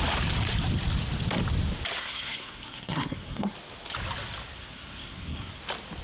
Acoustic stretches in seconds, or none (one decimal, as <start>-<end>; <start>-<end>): 0.0-2.0; 3.5-4.6; 5.6-6.0